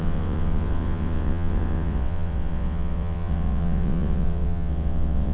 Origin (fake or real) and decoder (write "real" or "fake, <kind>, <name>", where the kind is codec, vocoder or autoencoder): fake, vocoder, WaveNeXt